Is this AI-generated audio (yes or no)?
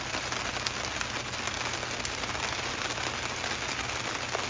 no